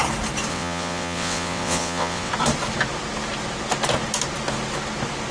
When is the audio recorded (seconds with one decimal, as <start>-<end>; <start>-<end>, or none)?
0.0-0.5; 2.3-5.3